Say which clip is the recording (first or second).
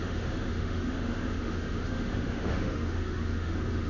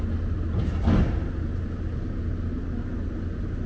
second